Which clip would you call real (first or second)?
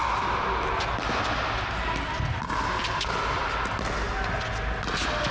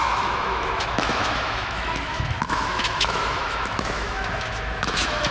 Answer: first